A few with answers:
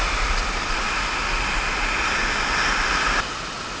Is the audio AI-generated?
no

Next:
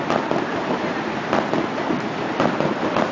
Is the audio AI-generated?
no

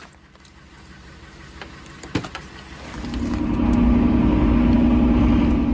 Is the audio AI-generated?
no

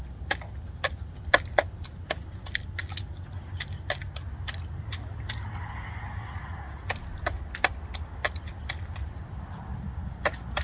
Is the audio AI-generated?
no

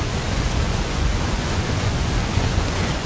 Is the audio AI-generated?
yes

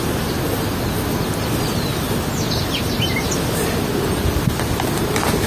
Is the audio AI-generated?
no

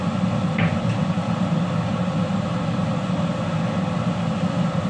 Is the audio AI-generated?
no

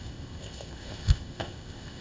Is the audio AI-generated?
yes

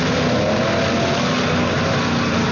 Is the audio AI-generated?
no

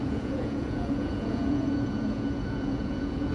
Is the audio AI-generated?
yes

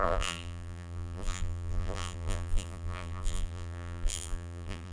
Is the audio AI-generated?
yes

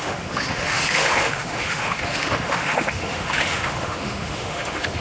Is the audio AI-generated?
yes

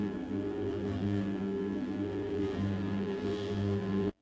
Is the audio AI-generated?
yes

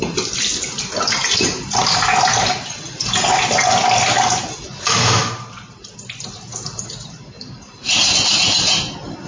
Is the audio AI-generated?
no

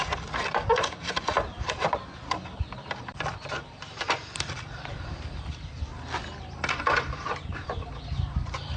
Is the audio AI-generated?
yes